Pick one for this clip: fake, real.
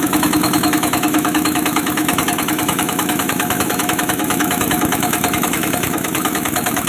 fake